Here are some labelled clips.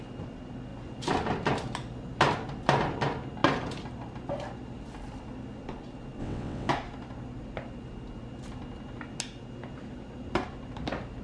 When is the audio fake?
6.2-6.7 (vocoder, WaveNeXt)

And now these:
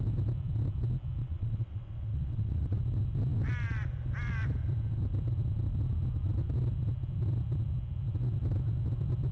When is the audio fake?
1.2-2.8 (vocoder, WaveNeXt)

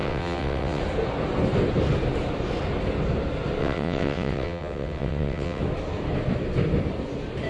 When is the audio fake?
0.0-0.8 (vocoder, WaveNeXt); 3.6-5.6